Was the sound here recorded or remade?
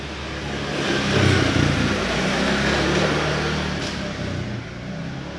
recorded